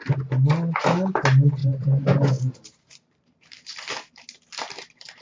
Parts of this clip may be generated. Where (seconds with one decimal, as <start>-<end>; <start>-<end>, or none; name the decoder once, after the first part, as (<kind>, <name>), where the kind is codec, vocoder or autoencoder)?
1.6-3.9 (vocoder, BigVGAN v2)